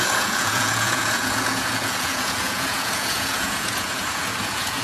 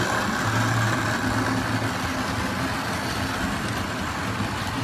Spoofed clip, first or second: first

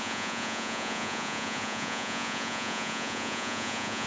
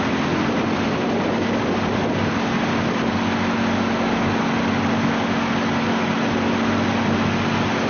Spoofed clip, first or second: first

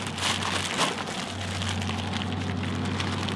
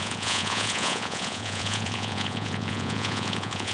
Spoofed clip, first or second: second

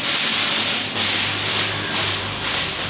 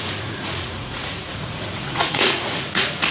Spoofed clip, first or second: second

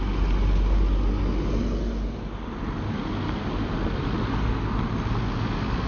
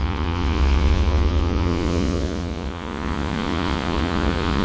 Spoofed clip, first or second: second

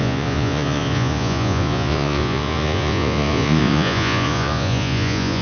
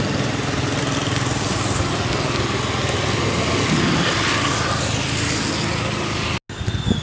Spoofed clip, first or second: first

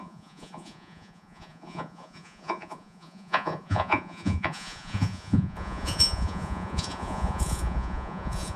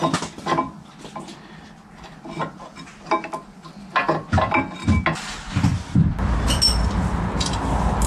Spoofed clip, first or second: first